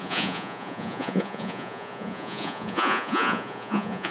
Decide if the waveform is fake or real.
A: fake